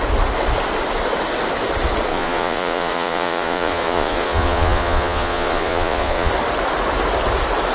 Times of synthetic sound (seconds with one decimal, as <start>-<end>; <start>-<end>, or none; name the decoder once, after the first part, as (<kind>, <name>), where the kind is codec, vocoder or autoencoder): 2.1-6.3 (vocoder, Vocos)